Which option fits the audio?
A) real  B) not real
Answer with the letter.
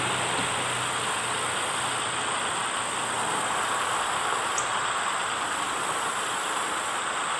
A